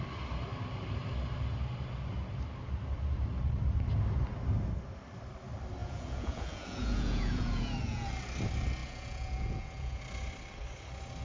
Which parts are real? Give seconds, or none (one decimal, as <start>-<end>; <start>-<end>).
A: 0.0-5.8; 8.1-8.8; 10.0-11.2